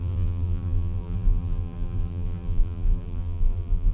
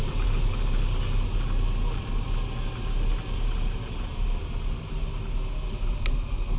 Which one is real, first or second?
second